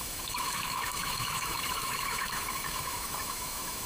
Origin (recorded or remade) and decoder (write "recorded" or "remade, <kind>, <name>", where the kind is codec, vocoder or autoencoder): remade, autoencoder, DAC-VAE